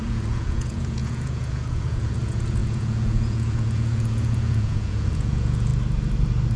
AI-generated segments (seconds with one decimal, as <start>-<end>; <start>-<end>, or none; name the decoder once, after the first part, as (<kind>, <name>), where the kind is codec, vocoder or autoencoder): 0.0-5.7 (vocoder, Vocos)